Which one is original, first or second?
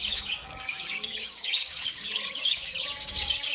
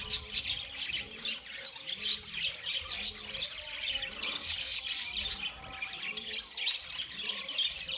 second